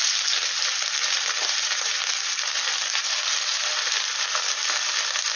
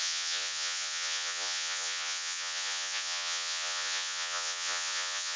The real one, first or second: first